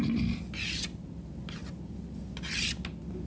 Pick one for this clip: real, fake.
real